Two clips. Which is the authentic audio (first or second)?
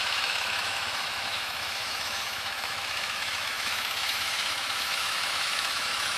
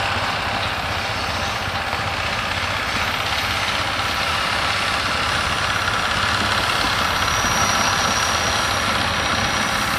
second